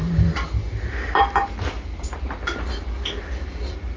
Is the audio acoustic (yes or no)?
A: yes